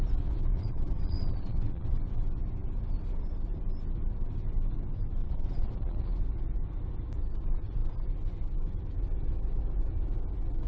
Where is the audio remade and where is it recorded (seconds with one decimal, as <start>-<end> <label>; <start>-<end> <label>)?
0.0-0.5 recorded; 0.5-2.0 remade; 2.0-5.2 recorded; 5.2-6.2 remade; 6.2-10.7 recorded

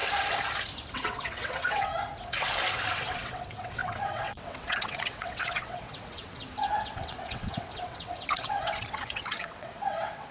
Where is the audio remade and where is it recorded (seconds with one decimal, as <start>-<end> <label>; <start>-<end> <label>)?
0.0-0.9 recorded; 0.9-1.9 remade; 1.9-2.9 recorded; 2.9-10.3 remade